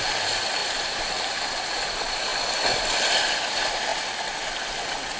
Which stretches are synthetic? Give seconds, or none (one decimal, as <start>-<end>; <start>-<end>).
0.6-1.5